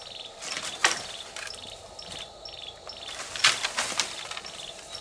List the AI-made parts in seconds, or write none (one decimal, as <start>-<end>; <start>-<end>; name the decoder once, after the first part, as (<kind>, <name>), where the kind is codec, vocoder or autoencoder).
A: none